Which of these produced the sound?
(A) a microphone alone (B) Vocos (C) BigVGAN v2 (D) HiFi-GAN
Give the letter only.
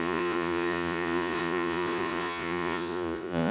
B